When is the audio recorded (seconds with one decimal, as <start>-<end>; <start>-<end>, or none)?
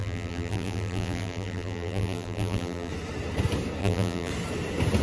2.9-3.8; 4.3-5.0